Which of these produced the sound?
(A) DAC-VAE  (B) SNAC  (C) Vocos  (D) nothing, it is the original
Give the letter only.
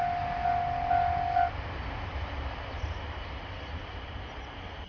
D